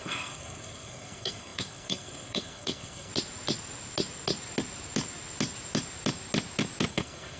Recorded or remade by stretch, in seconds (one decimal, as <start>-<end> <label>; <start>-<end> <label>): 0.0-3.1 remade; 3.1-6.9 recorded; 6.9-7.4 remade